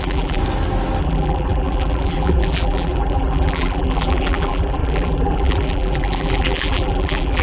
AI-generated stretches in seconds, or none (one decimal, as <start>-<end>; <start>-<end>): 0.0-0.4; 1.0-7.4